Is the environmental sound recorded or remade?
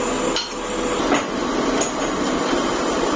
recorded